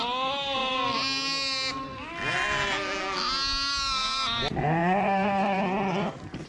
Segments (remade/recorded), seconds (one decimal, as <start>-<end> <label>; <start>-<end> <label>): 0.0-4.8 recorded; 4.8-5.6 remade; 5.6-6.5 recorded